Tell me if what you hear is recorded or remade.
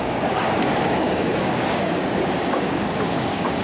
remade